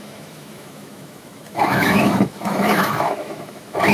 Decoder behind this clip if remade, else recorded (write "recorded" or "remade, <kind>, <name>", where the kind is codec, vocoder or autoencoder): remade, autoencoder, DAC-VAE